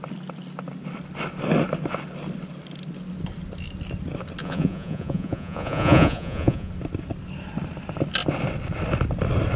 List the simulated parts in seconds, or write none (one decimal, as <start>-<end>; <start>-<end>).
4.4-6.7

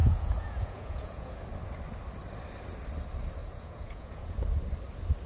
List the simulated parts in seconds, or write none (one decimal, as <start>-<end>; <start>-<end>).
0.0-1.4; 3.4-4.3

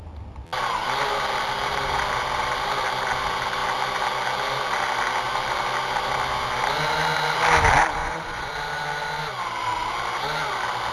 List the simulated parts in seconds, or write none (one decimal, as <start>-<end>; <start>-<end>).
8.0-8.5

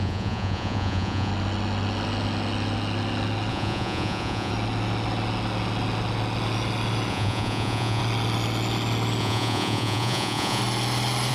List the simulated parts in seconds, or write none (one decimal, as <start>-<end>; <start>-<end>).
0.0-1.3; 3.5-4.5; 7.1-8.0; 9.2-10.6

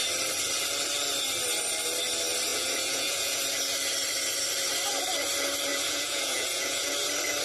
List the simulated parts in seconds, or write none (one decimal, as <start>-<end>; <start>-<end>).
2.5-3.4; 5.7-6.9